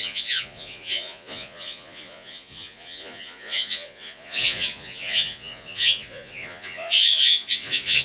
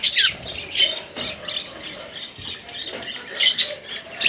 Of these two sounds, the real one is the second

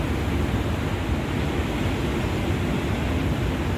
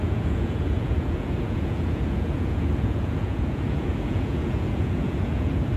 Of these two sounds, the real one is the first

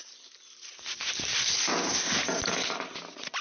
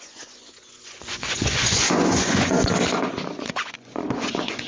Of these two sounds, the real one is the first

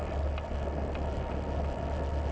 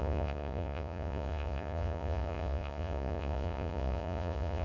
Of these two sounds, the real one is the first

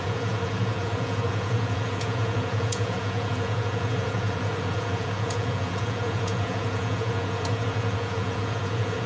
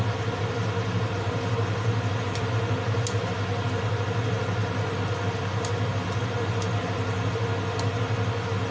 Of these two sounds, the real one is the second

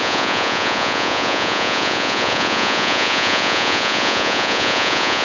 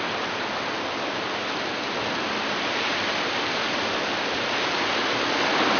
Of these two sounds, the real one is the second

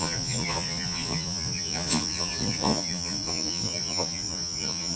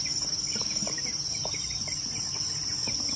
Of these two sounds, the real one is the second